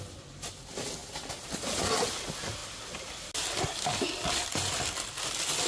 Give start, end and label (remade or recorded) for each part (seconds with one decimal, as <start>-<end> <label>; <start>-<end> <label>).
0.0-5.7 recorded